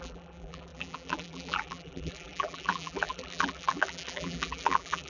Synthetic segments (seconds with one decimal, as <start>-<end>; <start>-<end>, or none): 0.0-5.1